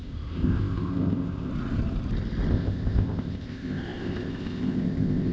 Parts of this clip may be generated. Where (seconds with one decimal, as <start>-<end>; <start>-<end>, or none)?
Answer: 0.0-1.5; 2.5-5.3